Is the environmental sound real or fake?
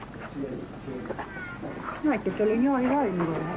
real